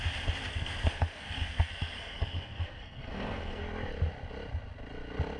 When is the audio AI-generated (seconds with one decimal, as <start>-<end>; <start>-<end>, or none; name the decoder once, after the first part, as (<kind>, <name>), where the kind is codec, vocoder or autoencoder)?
0.5-3.6 (codec, SNAC)